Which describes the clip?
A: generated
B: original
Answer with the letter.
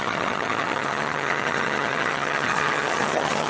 A